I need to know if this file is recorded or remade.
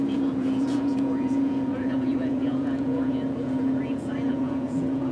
remade